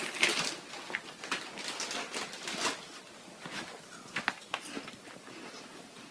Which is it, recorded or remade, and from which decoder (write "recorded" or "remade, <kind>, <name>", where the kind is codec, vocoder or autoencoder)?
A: recorded